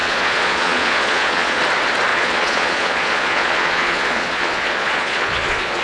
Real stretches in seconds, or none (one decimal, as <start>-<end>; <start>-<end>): 1.6-2.1